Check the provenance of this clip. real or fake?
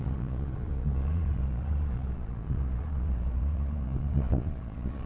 fake